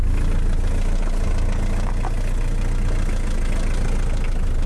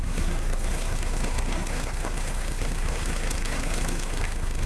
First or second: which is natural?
first